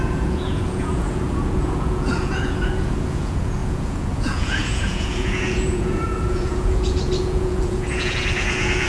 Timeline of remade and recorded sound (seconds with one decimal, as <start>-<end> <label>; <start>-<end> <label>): 0.0-8.9 remade

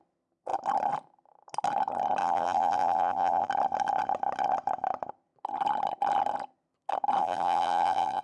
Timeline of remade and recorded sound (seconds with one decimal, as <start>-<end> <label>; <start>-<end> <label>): 0.0-2.2 recorded; 2.2-3.5 remade; 3.5-7.2 recorded; 7.2-8.2 remade

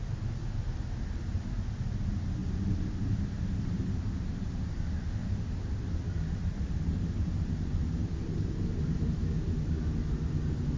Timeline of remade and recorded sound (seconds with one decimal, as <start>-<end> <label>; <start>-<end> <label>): 0.0-5.2 recorded; 5.2-7.5 remade; 7.5-10.8 recorded

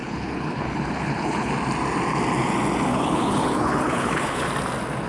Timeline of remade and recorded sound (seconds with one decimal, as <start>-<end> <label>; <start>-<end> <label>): 0.0-1.5 remade; 1.5-2.9 recorded; 2.9-4.5 remade; 4.5-5.1 recorded

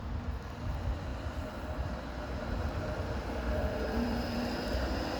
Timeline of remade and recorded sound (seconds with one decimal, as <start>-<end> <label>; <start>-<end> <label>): 0.0-1.1 recorded; 1.1-1.9 remade; 1.9-3.6 recorded; 3.6-4.8 remade; 4.8-5.2 recorded

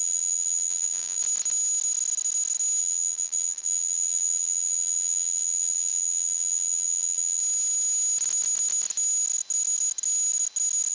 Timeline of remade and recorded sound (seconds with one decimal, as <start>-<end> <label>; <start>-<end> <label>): 0.0-1.2 remade; 1.2-2.8 recorded; 2.8-7.4 remade; 7.4-10.9 recorded

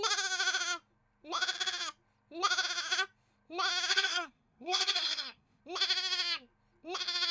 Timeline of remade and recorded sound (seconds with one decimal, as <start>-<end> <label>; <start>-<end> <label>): 0.0-3.9 recorded; 3.9-5.6 remade; 5.6-7.3 recorded

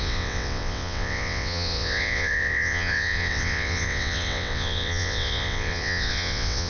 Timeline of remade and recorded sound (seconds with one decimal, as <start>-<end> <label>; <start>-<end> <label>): 0.0-6.7 remade